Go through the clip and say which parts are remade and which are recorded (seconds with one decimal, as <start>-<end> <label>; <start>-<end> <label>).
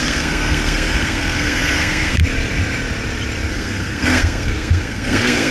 0.0-2.2 remade; 2.2-3.5 recorded; 3.5-5.5 remade